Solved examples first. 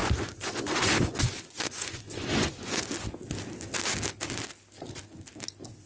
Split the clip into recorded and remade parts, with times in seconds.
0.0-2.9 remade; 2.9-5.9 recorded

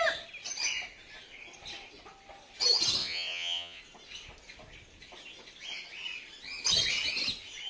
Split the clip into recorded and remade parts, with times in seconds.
0.0-3.0 recorded; 3.0-3.8 remade; 3.8-7.7 recorded